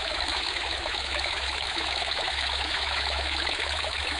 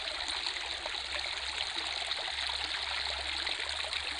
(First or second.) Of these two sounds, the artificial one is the first